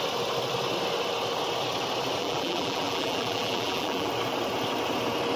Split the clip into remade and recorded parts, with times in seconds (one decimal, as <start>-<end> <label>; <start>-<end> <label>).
0.0-2.2 recorded; 2.2-4.1 remade; 4.1-5.4 recorded